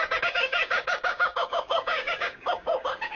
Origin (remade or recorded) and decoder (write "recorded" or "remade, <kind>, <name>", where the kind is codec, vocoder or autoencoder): remade, codec, DAC